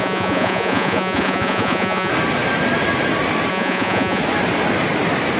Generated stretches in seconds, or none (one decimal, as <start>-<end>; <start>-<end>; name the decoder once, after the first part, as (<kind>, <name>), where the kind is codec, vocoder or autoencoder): 0.0-2.1 (vocoder, Vocos); 3.5-4.2